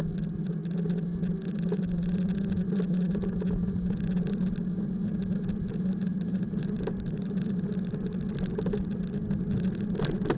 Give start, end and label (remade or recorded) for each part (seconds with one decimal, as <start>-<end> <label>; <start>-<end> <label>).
0.0-6.1 recorded; 6.1-7.7 remade; 7.7-10.4 recorded

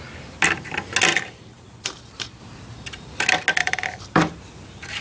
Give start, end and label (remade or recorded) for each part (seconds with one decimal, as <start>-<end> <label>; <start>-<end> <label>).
0.0-1.1 recorded; 1.1-2.4 remade; 2.4-3.6 recorded; 3.6-4.4 remade; 4.4-5.0 recorded

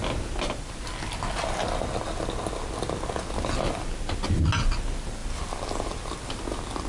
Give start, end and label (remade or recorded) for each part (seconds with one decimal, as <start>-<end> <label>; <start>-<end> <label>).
0.0-6.9 recorded

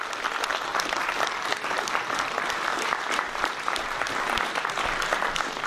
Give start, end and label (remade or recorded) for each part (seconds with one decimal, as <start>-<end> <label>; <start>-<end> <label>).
0.0-0.7 recorded; 0.7-4.1 remade; 4.1-5.7 recorded